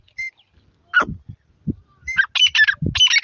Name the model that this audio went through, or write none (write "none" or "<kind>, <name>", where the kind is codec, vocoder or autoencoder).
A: none